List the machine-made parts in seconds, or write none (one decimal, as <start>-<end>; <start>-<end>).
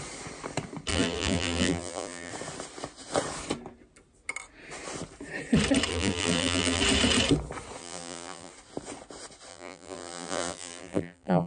0.9-2.3; 5.9-6.8; 7.8-8.5; 9.5-11.5